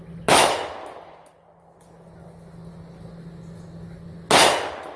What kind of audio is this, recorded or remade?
recorded